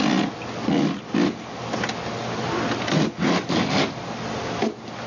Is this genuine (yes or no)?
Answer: yes